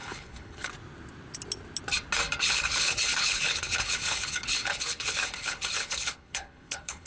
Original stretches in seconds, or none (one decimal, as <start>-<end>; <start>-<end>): 0.7-2.4